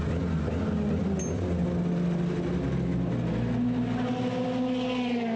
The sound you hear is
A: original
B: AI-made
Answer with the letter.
A